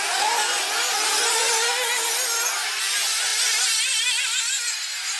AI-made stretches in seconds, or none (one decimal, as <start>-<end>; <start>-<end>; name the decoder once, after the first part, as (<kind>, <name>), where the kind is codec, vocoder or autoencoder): none